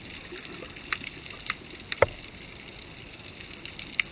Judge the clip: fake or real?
real